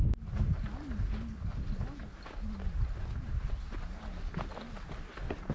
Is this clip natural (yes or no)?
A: yes